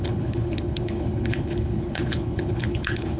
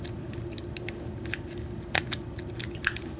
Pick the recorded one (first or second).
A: second